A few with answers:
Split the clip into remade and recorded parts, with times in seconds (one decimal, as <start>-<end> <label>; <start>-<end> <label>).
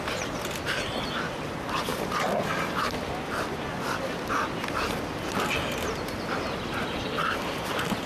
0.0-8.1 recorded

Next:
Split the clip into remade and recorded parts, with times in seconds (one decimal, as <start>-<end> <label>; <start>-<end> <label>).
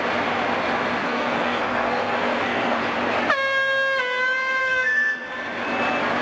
0.0-1.0 recorded; 1.0-2.8 remade; 2.8-4.6 recorded; 4.6-5.3 remade; 5.3-6.2 recorded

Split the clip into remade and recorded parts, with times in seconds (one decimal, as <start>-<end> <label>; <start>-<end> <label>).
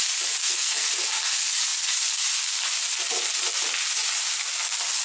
0.0-0.4 recorded; 0.4-0.9 remade; 0.9-5.0 recorded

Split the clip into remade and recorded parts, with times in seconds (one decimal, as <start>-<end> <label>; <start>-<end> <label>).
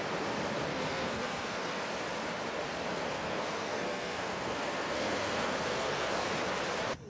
0.0-0.7 recorded; 0.7-1.8 remade; 1.8-2.9 recorded; 2.9-6.3 remade; 6.3-7.1 recorded